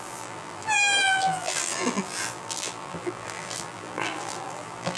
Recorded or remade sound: remade